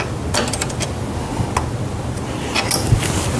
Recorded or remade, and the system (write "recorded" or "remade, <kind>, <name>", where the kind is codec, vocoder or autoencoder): recorded